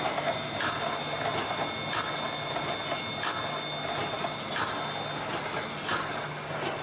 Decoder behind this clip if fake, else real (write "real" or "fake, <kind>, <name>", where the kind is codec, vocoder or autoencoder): real